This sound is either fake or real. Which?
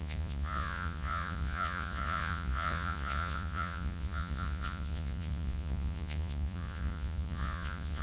fake